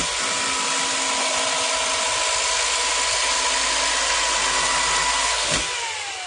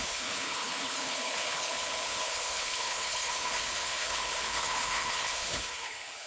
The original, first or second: first